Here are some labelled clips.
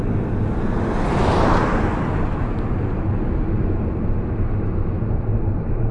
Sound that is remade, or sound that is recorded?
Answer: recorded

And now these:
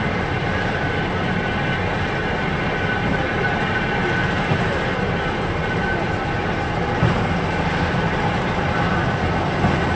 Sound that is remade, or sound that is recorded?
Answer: recorded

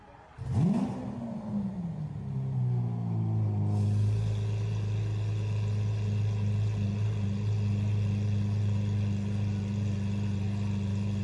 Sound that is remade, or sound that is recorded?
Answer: recorded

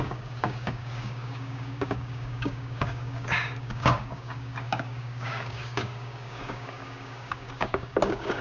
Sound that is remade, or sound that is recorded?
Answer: remade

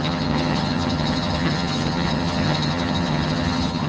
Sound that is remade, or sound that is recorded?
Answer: remade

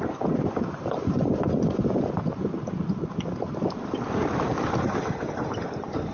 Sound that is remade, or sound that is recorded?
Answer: remade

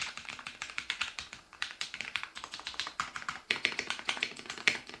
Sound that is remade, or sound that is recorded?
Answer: remade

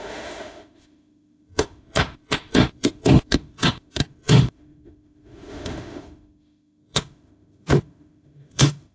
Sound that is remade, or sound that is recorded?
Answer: remade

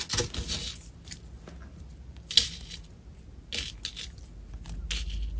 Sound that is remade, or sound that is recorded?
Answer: recorded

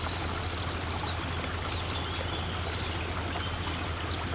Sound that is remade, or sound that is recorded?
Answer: recorded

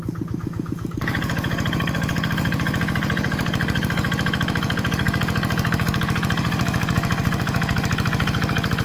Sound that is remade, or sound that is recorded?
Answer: remade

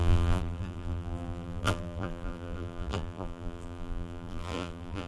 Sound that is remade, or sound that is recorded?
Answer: remade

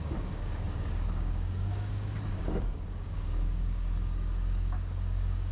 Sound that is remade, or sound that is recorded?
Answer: remade